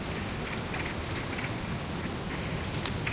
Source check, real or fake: real